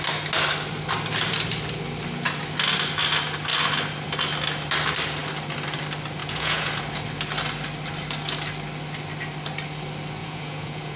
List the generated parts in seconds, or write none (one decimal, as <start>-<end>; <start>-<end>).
6.2-6.8; 10.2-11.0